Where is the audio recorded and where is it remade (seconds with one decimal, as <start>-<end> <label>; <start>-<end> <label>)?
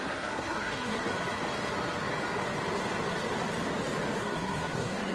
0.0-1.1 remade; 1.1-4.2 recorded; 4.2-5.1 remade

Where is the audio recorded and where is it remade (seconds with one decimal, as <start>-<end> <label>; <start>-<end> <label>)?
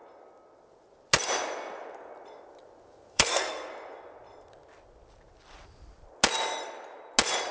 0.0-3.1 recorded; 3.1-3.7 remade; 3.7-7.5 recorded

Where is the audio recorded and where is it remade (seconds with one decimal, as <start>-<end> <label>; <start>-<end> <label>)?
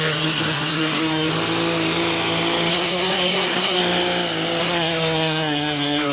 0.0-1.3 remade; 1.3-2.7 recorded; 2.7-3.8 remade; 3.8-4.6 recorded; 4.6-6.1 remade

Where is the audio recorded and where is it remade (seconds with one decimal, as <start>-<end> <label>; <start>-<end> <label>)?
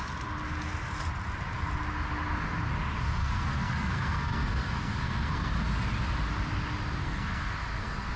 0.0-3.2 recorded; 3.2-5.5 remade; 5.5-7.0 recorded; 7.0-8.2 remade